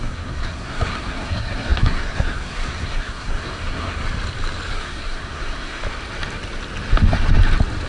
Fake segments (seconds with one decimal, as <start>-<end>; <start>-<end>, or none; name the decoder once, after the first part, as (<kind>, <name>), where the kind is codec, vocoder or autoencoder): 0.0-4.0 (codec, SNAC); 4.7-5.8

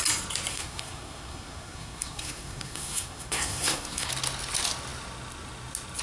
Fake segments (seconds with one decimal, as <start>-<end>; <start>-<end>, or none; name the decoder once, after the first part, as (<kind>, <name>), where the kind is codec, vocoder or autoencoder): 0.5-4.1 (codec, SNAC)

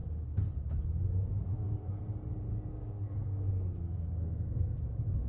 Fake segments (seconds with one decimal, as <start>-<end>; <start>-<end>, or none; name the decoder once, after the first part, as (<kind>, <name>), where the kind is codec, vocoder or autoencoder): 1.5-2.0 (codec, SNAC); 2.7-4.8

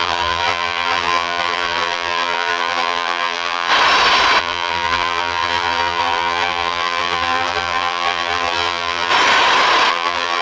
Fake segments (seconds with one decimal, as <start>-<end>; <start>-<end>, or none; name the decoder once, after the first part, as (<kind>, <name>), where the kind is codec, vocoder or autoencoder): 0.0-3.7 (vocoder, BigVGAN v2); 4.4-9.1; 9.9-10.4

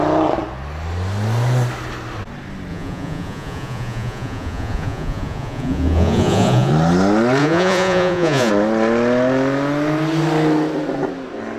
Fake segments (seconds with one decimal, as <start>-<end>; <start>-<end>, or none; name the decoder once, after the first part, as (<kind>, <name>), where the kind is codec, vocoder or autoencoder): 2.7-6.7 (vocoder, Vocos); 7.4-8.5